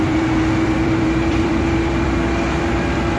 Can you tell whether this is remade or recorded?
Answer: remade